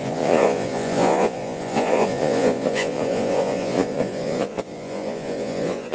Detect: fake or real fake